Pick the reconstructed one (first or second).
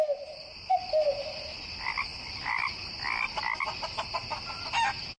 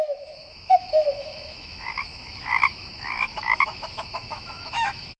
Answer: second